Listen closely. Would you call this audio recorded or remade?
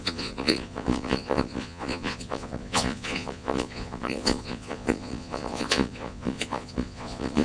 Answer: remade